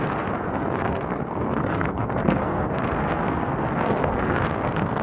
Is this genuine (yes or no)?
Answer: no